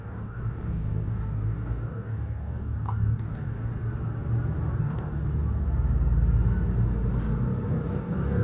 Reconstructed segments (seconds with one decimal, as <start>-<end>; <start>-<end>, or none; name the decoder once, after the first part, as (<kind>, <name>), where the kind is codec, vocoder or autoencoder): 0.0-3.7 (codec, DAC); 4.8-5.2; 7.7-8.4